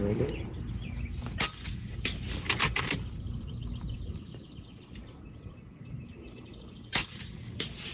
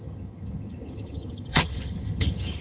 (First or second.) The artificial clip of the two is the second